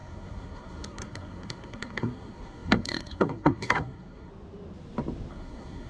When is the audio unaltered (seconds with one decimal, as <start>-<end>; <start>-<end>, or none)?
4.3-5.3